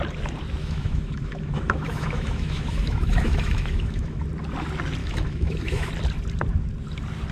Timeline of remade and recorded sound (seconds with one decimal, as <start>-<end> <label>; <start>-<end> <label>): 0.0-0.6 recorded; 0.6-4.2 remade; 4.2-5.0 recorded; 5.0-5.9 remade; 5.9-7.3 recorded